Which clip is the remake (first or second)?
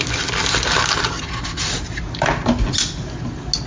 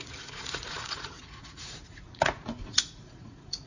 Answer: second